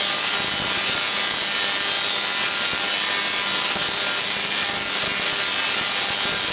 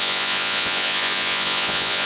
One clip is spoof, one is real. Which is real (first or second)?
first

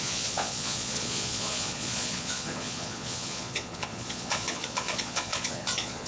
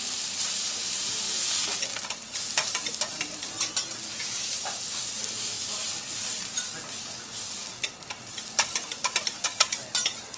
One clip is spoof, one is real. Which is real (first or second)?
second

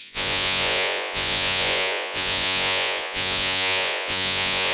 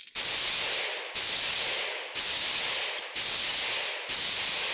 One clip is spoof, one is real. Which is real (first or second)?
second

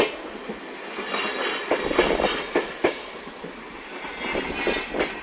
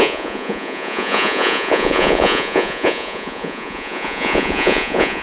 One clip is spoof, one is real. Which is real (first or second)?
first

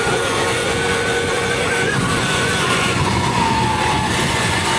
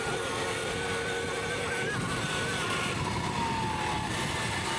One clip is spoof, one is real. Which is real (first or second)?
second